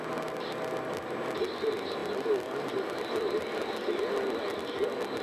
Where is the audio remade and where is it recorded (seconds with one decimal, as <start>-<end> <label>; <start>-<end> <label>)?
0.0-5.2 recorded